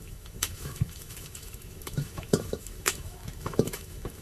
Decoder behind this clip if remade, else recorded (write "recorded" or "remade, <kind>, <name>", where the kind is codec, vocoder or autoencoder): remade, autoencoder, DAC-VAE